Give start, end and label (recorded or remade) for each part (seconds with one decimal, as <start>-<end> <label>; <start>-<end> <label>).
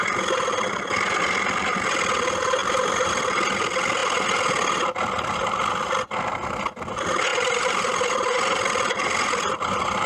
0.0-2.6 recorded; 2.6-3.1 remade; 3.1-7.3 recorded; 7.3-8.0 remade; 8.0-10.1 recorded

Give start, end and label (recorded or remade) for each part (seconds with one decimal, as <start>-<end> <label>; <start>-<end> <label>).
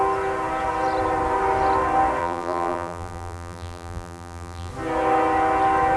0.0-2.2 recorded; 2.2-4.7 remade; 4.7-6.0 recorded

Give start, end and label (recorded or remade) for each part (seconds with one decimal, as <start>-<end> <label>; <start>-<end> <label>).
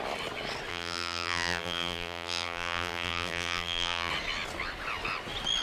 0.0-0.7 recorded; 0.7-4.1 remade; 4.1-5.6 recorded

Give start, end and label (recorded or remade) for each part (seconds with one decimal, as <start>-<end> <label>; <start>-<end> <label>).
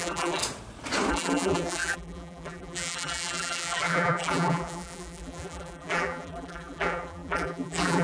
0.0-0.4 remade; 0.4-1.1 recorded; 1.1-8.0 remade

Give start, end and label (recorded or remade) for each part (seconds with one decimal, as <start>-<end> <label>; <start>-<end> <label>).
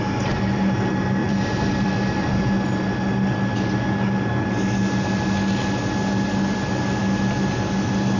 0.0-1.2 recorded; 1.2-2.5 remade; 2.5-8.2 recorded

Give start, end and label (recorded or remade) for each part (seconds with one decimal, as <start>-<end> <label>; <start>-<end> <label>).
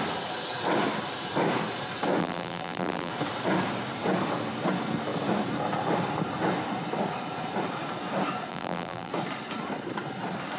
0.0-2.2 recorded; 2.2-3.1 remade; 3.1-8.5 recorded; 8.5-9.1 remade; 9.1-10.6 recorded